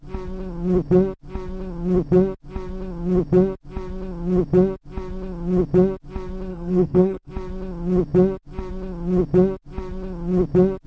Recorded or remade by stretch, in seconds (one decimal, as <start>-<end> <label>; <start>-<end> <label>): 0.0-6.5 recorded; 6.5-7.3 remade; 7.3-10.9 recorded